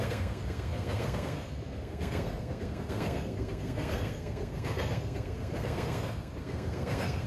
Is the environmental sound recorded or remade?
remade